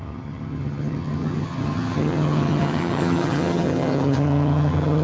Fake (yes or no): yes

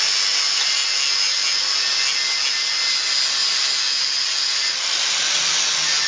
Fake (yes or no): no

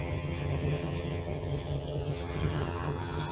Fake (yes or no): yes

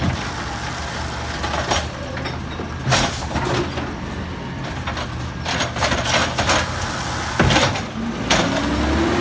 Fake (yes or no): no